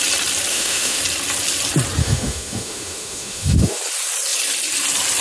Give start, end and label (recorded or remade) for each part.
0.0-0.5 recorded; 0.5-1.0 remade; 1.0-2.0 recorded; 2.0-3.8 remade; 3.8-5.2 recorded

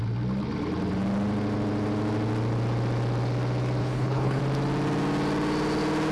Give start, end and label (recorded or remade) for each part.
0.0-3.8 recorded; 3.8-4.4 remade; 4.4-6.1 recorded

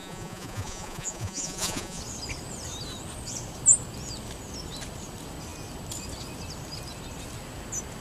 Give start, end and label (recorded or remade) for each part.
0.0-2.0 remade; 2.0-8.0 recorded

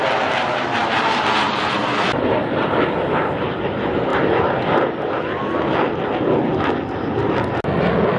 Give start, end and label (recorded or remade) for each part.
0.0-4.1 recorded; 4.1-5.0 remade; 5.0-8.2 recorded